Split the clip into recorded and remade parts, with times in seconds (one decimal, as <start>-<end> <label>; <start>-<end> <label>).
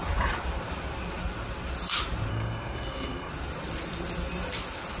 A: 0.0-2.3 recorded; 2.3-3.3 remade; 3.3-5.0 recorded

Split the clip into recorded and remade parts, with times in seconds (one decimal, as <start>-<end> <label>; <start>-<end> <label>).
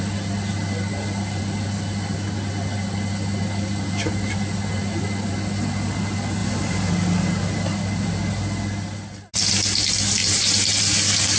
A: 0.0-6.4 recorded; 6.4-6.9 remade; 6.9-10.2 recorded; 10.2-10.8 remade; 10.8-11.4 recorded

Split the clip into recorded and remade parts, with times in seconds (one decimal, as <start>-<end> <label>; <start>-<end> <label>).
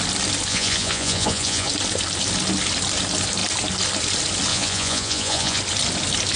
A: 0.0-0.5 recorded; 0.5-1.7 remade; 1.7-4.5 recorded; 4.5-5.6 remade; 5.6-6.4 recorded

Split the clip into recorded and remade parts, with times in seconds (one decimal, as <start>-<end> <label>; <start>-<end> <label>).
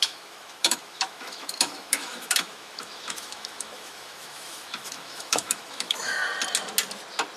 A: 0.0-6.2 remade; 6.2-7.4 recorded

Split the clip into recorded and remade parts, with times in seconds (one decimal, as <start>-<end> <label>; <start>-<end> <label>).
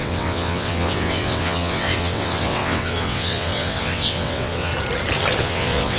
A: 0.0-4.7 remade; 4.7-5.4 recorded; 5.4-6.0 remade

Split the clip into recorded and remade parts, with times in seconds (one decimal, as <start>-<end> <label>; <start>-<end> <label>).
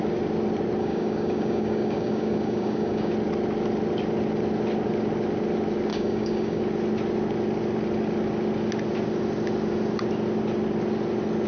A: 0.0-0.8 recorded; 0.8-3.1 remade; 3.1-5.9 recorded; 5.9-6.6 remade; 6.6-11.5 recorded